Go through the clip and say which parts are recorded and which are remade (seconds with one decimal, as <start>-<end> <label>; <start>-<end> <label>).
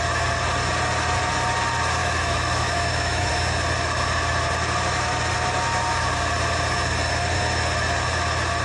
0.0-2.0 recorded; 2.0-3.3 remade; 3.3-8.6 recorded